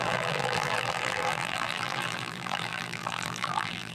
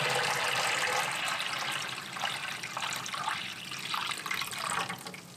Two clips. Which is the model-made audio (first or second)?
first